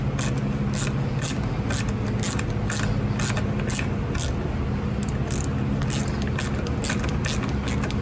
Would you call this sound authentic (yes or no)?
yes